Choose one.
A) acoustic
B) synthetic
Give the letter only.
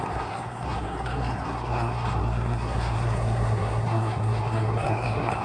B